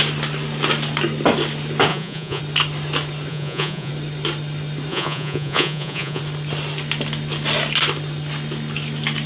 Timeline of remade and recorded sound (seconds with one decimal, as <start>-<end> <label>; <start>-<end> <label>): 0.0-1.9 recorded; 1.9-2.4 remade; 2.4-3.3 recorded; 3.3-3.9 remade; 3.9-4.9 recorded; 4.9-6.2 remade; 6.2-9.3 recorded